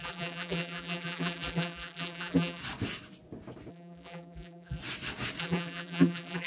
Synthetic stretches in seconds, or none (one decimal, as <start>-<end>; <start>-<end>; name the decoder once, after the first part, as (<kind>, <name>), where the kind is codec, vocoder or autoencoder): 0.0-2.6 (vocoder, BigVGAN v2); 3.7-4.8; 5.4-6.5